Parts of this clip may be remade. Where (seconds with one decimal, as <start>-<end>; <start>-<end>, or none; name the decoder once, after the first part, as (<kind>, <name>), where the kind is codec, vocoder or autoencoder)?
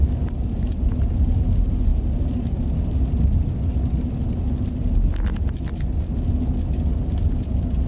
none